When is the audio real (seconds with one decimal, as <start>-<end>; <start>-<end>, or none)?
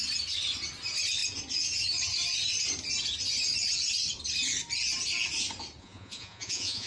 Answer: 0.0-5.8